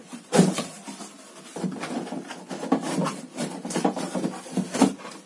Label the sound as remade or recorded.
remade